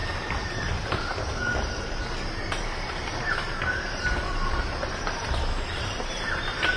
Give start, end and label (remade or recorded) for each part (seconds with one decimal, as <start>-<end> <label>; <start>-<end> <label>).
0.0-2.4 recorded; 2.4-6.8 remade